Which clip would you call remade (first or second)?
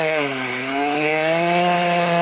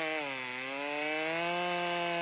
first